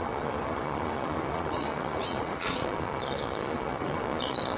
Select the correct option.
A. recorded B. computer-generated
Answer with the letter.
B